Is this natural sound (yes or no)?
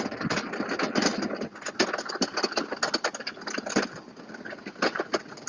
yes